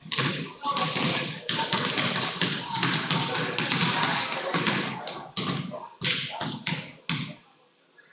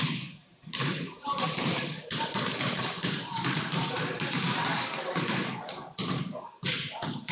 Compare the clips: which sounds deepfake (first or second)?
second